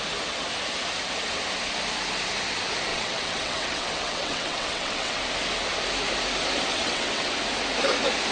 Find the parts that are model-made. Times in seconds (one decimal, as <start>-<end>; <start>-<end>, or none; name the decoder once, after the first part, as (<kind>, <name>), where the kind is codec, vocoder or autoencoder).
2.9-5.2 (vocoder, WaveNeXt); 6.7-7.3

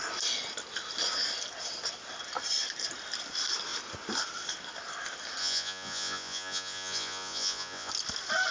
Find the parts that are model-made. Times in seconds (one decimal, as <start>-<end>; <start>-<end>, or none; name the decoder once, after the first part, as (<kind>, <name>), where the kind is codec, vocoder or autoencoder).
5.4-7.9 (vocoder, Vocos)

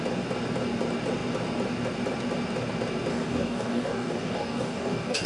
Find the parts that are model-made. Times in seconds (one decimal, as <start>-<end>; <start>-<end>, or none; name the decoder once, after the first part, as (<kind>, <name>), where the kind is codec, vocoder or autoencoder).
3.1-5.3 (codec, DAC)

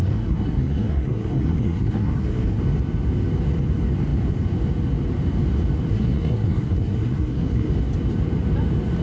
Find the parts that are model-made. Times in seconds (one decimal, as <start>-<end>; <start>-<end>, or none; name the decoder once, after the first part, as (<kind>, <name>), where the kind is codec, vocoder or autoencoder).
0.0-2.6 (codec, SNAC); 5.9-7.7